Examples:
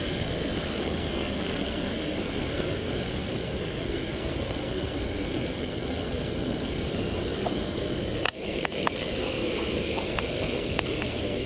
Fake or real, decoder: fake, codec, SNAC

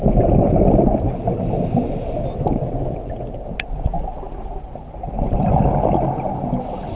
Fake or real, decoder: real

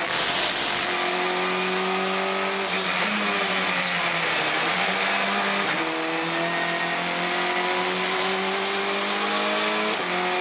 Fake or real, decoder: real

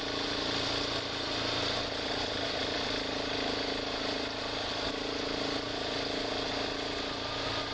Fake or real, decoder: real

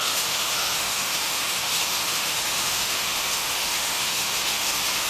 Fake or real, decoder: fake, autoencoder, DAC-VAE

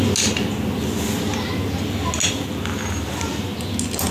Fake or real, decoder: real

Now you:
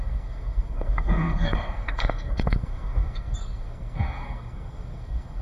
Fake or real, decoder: fake, codec, SNAC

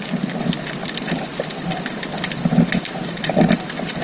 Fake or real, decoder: real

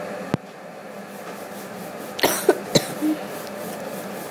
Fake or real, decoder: real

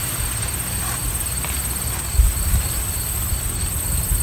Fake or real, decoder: real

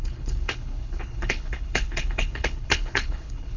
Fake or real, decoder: fake, codec, HILCodec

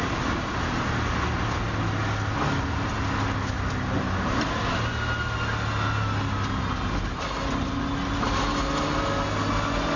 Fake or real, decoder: real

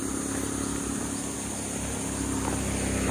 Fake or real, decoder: real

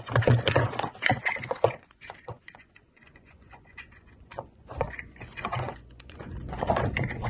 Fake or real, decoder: fake, vocoder, Vocos